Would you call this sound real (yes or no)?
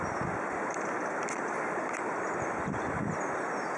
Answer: yes